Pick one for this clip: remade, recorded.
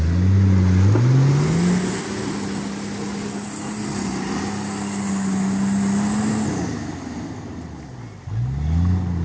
recorded